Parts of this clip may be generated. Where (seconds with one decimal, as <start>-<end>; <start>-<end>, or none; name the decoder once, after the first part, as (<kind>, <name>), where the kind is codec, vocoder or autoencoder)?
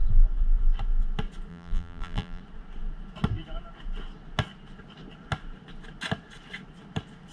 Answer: 1.5-2.4 (vocoder, BigVGAN v2)